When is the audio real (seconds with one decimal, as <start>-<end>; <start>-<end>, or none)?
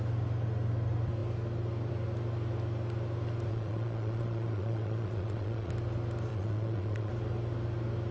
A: 0.0-3.5; 5.7-6.3; 7.1-8.1